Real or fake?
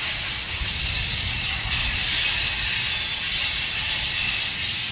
real